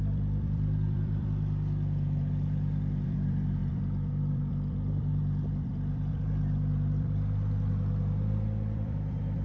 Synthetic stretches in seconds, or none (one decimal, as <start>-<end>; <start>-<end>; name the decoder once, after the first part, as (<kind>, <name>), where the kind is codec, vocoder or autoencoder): 0.0-9.4 (vocoder, BigVGAN v2)